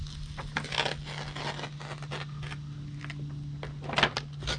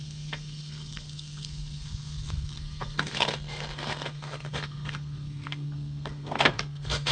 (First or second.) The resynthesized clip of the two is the second